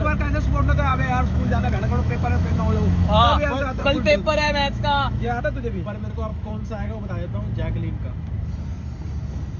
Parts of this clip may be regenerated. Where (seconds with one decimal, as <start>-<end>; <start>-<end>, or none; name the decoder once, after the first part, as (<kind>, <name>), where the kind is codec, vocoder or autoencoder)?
0.9-5.4 (autoencoder, DAC-VAE); 6.3-7.1